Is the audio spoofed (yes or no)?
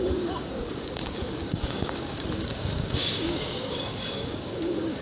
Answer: yes